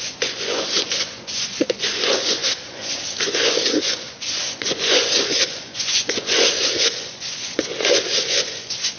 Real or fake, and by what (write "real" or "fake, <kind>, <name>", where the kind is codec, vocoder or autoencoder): fake, vocoder, Vocos